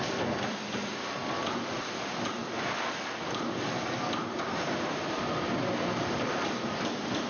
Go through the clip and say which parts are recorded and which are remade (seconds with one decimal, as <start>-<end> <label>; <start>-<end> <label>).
0.0-7.3 recorded